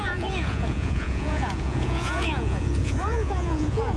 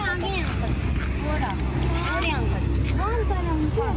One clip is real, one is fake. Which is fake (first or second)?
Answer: first